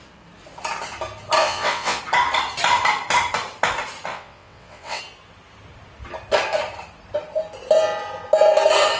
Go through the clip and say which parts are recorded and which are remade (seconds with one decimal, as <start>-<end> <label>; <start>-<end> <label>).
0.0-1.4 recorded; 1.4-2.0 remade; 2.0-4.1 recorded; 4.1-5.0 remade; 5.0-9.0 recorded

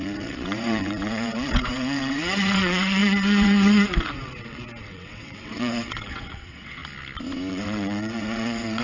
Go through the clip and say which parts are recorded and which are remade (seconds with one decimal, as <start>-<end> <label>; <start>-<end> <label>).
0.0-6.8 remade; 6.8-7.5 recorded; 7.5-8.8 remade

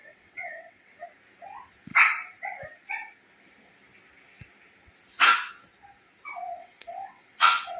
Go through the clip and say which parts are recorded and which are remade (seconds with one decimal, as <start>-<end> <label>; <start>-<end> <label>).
0.0-1.0 remade; 1.0-6.6 recorded; 6.6-7.8 remade